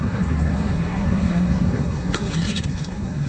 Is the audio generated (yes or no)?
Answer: yes